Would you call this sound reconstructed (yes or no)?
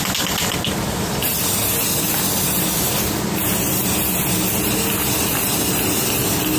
no